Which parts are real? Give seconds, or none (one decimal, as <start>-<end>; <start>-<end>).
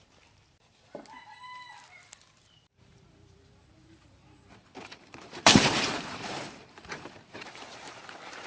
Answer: 0.0-2.9; 8.0-8.5